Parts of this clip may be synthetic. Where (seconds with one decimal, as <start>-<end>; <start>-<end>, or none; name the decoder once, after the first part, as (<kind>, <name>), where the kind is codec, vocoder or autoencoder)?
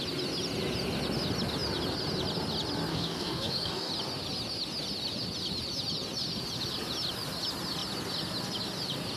2.9-3.9 (codec, DAC)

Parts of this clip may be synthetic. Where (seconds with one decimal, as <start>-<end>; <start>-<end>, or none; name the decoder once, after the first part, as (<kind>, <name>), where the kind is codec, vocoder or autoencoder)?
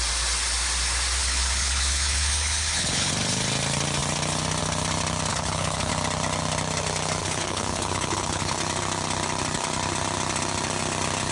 1.2-3.1 (codec, HILCodec); 5.3-5.9; 7.2-8.6